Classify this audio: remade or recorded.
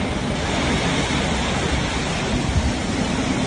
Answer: recorded